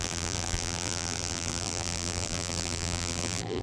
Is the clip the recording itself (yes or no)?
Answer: no